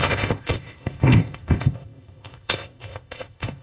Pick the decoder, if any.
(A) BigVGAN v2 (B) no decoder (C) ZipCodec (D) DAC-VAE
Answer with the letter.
C